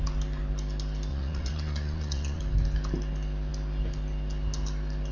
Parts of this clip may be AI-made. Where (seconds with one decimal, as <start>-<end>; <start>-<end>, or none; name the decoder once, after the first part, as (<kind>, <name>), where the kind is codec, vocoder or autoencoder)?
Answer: 1.1-2.4 (vocoder, Vocos)